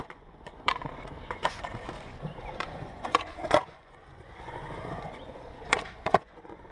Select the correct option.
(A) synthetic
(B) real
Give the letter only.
A